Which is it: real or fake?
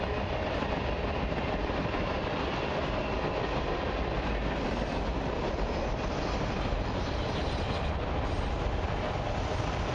real